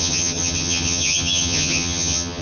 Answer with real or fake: fake